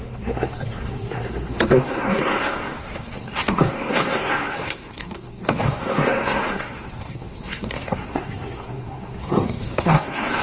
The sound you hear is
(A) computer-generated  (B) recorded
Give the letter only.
A